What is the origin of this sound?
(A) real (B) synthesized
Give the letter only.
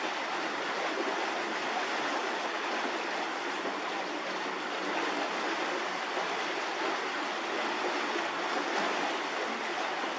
A